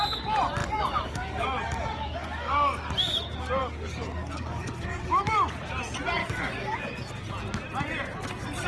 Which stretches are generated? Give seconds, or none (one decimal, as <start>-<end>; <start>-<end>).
0.6-2.9; 3.6-5.2; 6.2-7.2